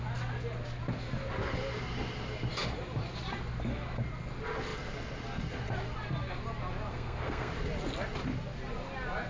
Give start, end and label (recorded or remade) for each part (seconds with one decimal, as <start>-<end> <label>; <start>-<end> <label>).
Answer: 0.0-6.9 recorded; 6.9-7.5 remade; 7.5-9.3 recorded